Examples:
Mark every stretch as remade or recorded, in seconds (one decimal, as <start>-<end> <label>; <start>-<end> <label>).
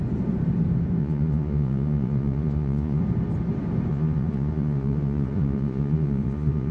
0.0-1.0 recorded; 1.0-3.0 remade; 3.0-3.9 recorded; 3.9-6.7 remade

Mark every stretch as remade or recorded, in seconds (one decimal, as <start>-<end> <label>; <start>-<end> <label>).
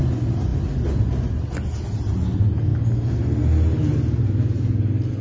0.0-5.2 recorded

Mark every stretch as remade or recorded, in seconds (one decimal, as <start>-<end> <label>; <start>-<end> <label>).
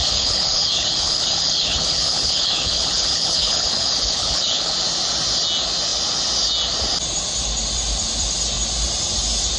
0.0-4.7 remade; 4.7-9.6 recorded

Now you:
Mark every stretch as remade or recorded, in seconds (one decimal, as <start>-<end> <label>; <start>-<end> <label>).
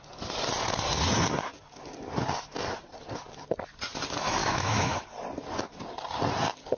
0.0-4.4 recorded; 4.4-5.0 remade; 5.0-6.8 recorded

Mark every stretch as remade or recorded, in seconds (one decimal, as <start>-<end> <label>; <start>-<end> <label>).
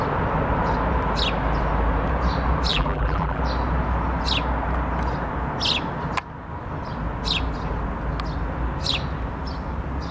0.0-2.7 recorded; 2.7-3.4 remade; 3.4-10.1 recorded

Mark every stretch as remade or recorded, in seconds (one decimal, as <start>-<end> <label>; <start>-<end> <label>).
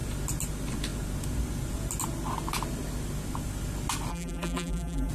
0.0-4.1 recorded; 4.1-5.1 remade